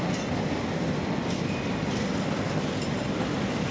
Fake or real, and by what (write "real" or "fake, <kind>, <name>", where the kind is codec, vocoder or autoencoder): real